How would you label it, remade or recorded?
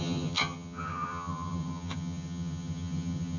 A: remade